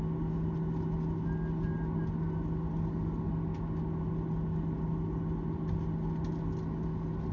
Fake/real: real